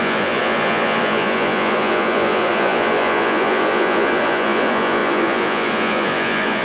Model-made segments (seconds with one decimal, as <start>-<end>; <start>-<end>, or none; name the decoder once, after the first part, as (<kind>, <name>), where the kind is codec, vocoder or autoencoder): 0.0-6.6 (vocoder, Vocos)